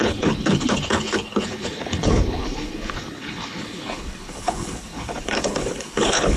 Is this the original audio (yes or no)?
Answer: no